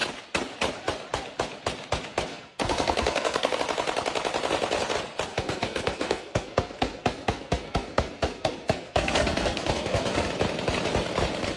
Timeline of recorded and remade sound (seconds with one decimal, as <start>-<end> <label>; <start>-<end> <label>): 0.0-2.3 recorded; 2.3-3.6 remade; 3.6-5.3 recorded; 5.3-10.3 remade; 10.3-11.6 recorded